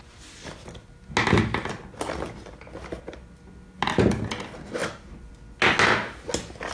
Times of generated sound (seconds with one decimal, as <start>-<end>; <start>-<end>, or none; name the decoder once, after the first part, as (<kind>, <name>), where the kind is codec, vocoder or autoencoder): none